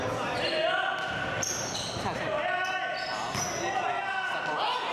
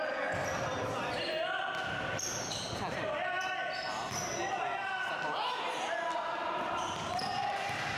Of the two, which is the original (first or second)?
first